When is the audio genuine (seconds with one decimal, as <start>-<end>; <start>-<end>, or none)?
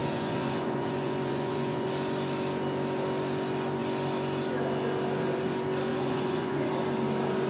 1.9-5.9; 6.7-7.5